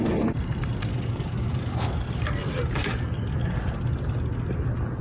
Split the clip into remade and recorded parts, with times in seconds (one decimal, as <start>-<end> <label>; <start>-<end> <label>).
0.0-0.9 recorded; 0.9-1.9 remade; 1.9-5.0 recorded